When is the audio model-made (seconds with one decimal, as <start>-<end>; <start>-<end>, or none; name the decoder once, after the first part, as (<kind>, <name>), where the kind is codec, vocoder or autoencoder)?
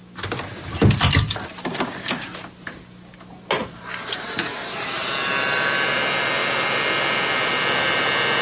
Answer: 3.6-5.1 (vocoder, BigVGAN v2)